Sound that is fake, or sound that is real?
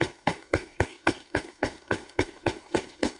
fake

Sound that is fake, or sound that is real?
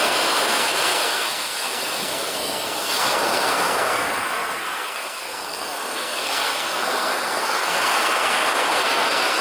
fake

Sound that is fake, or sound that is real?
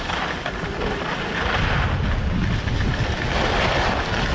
real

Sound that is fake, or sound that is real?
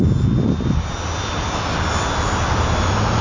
real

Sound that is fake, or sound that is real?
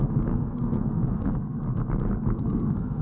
fake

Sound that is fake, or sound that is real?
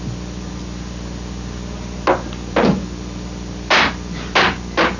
real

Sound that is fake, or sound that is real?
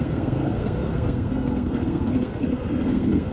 fake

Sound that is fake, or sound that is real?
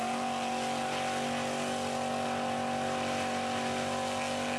real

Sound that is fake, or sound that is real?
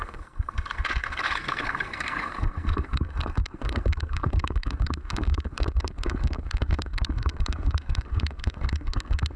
fake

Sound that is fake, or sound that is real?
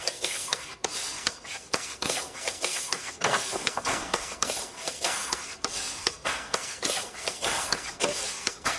fake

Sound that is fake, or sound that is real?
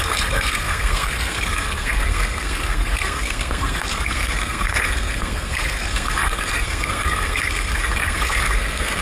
fake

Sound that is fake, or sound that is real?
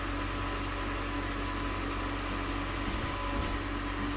real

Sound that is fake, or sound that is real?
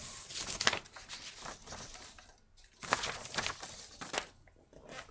real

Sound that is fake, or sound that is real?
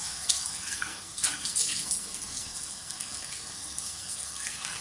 fake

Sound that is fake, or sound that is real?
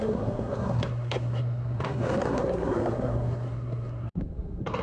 fake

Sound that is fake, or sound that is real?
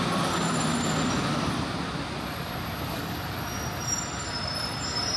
real